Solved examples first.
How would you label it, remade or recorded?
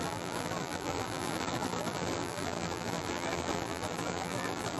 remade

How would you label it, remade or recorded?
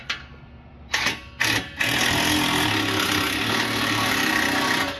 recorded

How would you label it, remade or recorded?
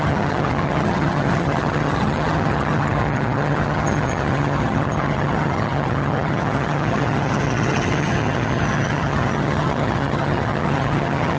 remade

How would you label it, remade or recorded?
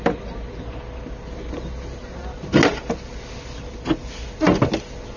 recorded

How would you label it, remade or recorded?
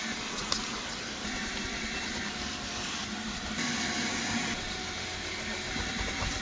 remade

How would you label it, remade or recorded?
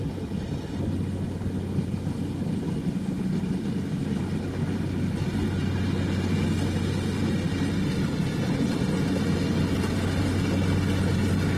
recorded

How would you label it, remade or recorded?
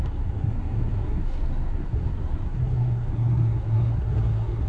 remade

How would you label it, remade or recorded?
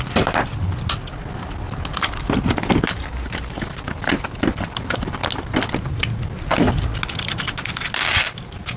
recorded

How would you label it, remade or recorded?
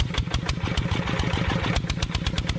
recorded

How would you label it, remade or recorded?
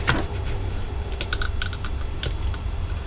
recorded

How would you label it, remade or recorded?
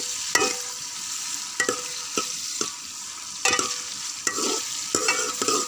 recorded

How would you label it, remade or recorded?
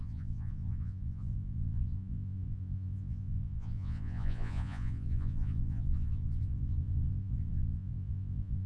remade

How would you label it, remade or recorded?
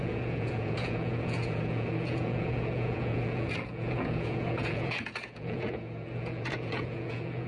remade